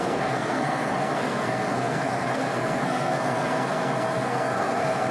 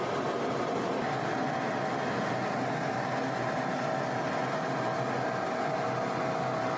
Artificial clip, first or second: first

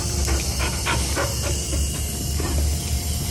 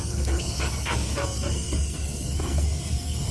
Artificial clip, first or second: second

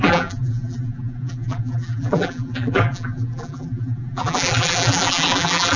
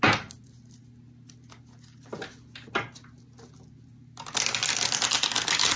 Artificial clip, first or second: first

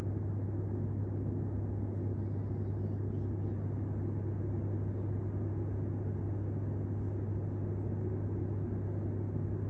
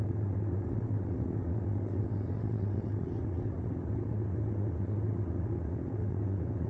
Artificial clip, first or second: second